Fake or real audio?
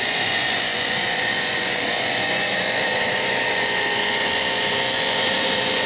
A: fake